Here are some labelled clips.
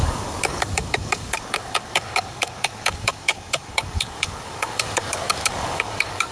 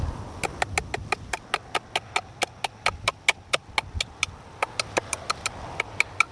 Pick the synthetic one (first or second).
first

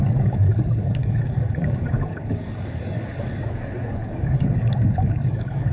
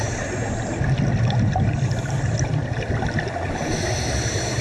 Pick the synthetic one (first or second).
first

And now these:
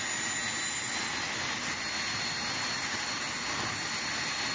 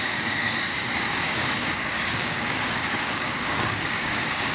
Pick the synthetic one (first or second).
second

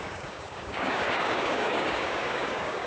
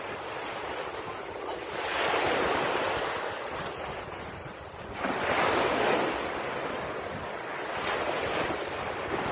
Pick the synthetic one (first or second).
first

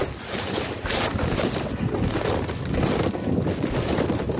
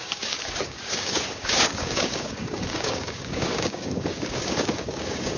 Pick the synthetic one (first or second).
second